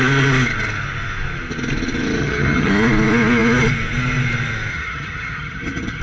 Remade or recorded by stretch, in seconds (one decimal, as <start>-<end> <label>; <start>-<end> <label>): 0.0-2.2 recorded; 2.2-2.7 remade; 2.7-4.7 recorded; 4.7-6.0 remade